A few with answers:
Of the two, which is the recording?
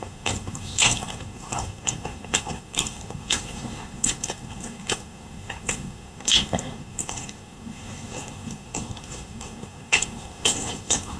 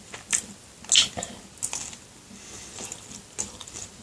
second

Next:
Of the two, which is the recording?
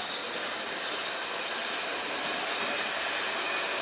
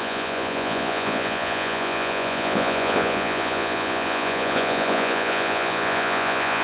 first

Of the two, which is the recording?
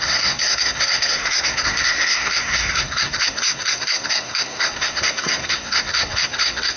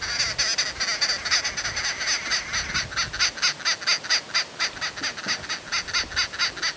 second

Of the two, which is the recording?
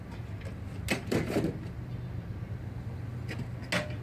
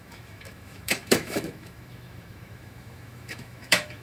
first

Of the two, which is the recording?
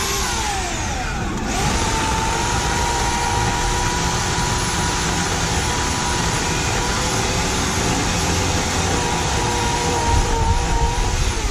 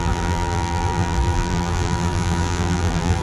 first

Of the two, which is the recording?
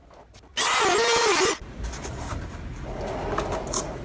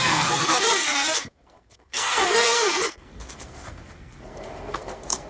first